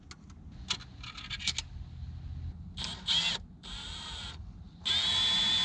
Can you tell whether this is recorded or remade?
recorded